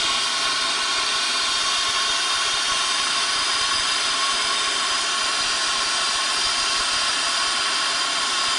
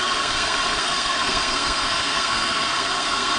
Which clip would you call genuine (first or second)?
first